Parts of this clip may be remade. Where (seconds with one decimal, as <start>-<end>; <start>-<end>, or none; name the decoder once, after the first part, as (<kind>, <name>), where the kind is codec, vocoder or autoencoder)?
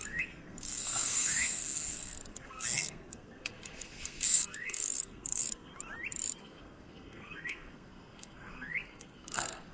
0.0-5.7 (codec, SNAC); 6.4-9.7